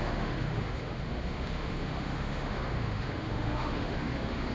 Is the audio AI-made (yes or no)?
yes